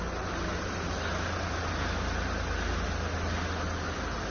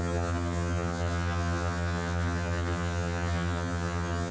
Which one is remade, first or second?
second